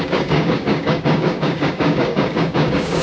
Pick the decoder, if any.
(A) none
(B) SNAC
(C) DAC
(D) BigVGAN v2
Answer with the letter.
C